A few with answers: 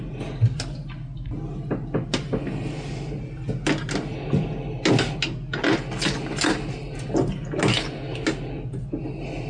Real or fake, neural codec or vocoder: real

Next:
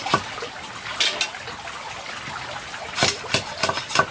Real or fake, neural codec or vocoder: real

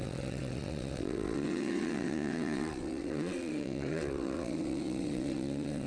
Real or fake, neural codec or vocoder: fake, vocoder, WaveNeXt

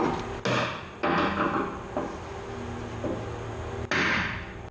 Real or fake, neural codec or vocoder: real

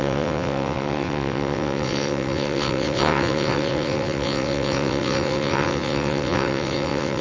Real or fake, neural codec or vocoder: fake, vocoder, WaveNeXt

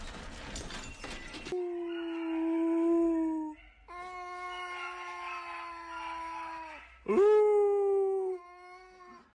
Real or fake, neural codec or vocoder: real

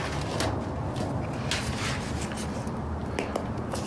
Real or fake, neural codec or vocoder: real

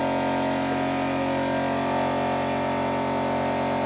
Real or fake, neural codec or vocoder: real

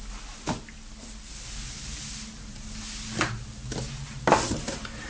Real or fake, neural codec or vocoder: real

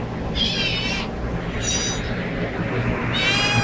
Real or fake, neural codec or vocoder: real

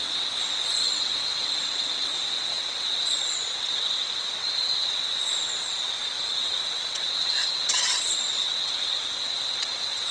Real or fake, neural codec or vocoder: fake, vocoder, WaveNeXt